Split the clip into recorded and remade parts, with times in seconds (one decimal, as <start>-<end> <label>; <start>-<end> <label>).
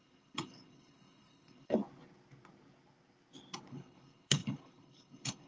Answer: 0.0-1.8 remade; 1.8-3.7 recorded; 3.7-5.5 remade